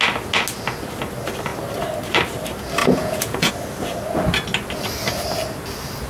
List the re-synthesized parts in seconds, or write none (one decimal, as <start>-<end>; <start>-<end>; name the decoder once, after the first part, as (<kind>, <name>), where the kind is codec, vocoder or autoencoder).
2.8-3.5 (vocoder, Vocos)